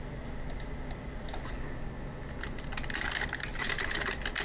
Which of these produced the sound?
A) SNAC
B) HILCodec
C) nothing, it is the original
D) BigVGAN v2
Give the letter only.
C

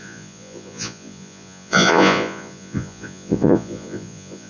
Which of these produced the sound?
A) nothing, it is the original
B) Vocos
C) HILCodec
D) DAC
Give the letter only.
B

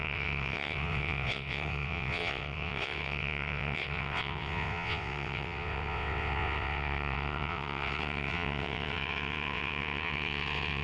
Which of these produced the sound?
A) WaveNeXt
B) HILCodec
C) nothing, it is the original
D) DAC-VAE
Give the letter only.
A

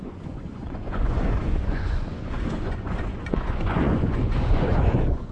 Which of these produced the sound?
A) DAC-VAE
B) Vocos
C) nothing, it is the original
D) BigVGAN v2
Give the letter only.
B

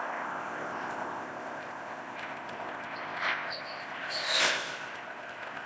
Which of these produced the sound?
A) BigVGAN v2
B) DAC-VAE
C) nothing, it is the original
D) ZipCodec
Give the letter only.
D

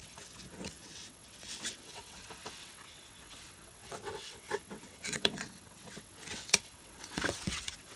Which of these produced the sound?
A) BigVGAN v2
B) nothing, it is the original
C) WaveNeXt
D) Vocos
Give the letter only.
C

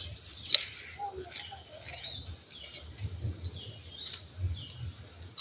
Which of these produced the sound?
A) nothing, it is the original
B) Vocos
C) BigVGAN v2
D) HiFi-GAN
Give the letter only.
A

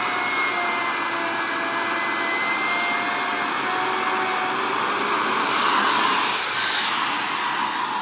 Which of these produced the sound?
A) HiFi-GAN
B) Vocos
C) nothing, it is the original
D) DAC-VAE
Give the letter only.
C